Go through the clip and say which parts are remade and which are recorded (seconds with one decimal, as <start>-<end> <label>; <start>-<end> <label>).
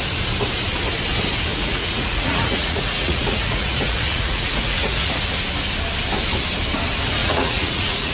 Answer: 0.0-1.5 recorded; 1.5-5.4 remade; 5.4-7.2 recorded; 7.2-8.1 remade